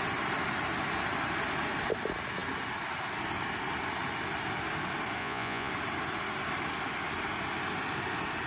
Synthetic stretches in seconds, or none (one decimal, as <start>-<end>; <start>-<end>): 5.2-5.7